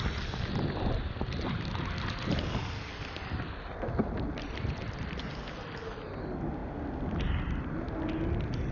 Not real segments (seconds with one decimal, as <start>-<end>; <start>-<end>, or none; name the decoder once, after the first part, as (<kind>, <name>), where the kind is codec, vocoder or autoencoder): 4.0-5.6 (vocoder, BigVGAN v2); 6.6-7.6